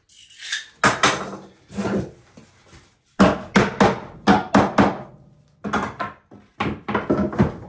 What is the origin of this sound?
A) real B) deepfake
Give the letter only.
A